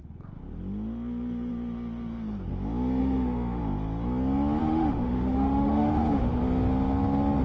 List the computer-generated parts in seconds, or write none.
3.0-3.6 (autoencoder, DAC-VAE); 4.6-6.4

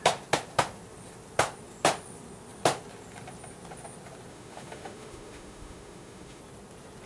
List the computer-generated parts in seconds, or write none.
4.3-6.4 (autoencoder, DAC-VAE)

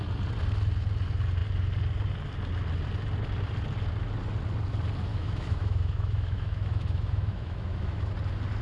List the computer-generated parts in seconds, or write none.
5.1-8.1 (autoencoder, DAC-VAE)

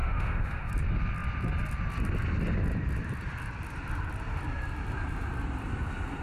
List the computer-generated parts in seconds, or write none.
0.0-0.7 (autoencoder, DAC-VAE)

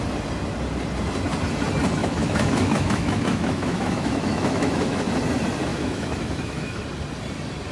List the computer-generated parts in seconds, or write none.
2.0-5.1 (autoencoder, DAC-VAE); 5.7-6.8

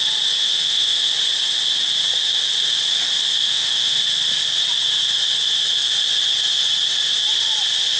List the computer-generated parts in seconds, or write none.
0.4-1.1 (autoencoder, DAC-VAE); 3.4-4.0

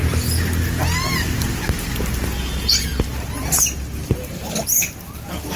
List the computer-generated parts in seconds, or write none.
none

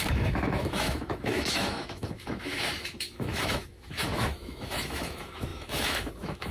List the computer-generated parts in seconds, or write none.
0.0-6.5 (autoencoder, DAC-VAE)